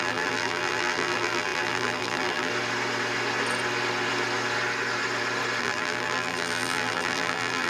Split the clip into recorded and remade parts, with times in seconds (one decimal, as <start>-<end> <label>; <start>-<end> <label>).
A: 0.0-2.5 remade; 2.5-5.6 recorded; 5.6-7.7 remade